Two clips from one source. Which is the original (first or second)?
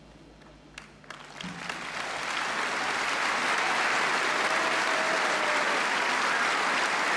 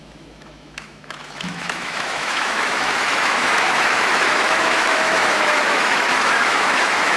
first